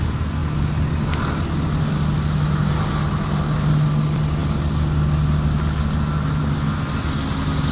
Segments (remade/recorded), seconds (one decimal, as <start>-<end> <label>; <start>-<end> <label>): 0.0-7.7 recorded